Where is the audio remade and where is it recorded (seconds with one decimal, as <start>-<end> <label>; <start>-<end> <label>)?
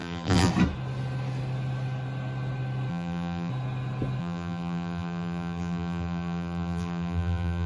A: 0.0-0.5 remade; 0.5-2.9 recorded; 2.9-3.5 remade; 3.5-4.2 recorded; 4.2-7.7 remade